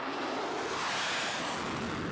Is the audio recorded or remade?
recorded